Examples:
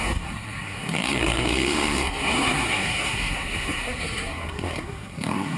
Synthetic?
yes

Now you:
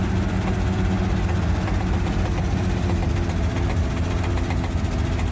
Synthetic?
no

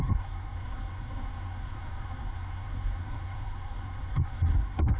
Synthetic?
yes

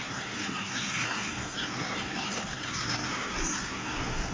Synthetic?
yes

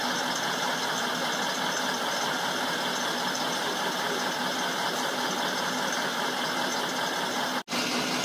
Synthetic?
no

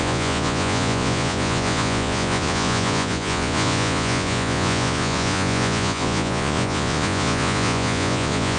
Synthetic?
yes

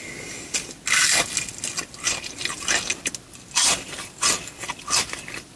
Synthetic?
no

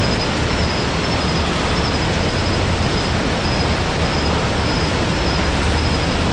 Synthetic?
no